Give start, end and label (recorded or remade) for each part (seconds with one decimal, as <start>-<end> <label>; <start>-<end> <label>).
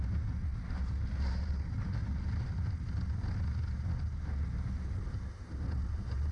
0.0-6.3 recorded